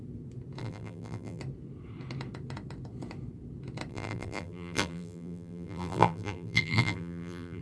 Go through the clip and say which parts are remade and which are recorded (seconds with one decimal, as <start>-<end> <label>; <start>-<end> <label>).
0.0-0.6 recorded; 0.6-1.4 remade; 1.4-3.9 recorded; 3.9-7.6 remade